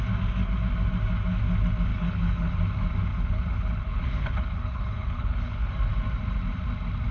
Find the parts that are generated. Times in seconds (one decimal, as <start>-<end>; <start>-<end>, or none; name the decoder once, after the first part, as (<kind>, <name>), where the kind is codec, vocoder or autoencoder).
1.9-2.6 (codec, HILCodec); 3.1-5.7

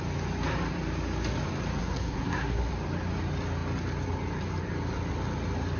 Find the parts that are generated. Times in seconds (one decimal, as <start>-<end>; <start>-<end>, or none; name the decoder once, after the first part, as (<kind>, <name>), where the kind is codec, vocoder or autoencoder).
1.8-2.7 (codec, SNAC)